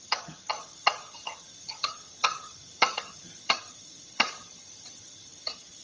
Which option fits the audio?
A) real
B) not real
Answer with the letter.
B